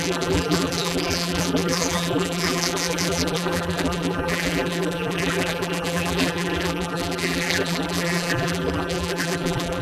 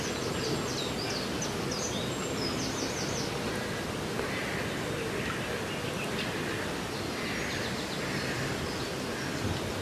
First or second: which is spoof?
first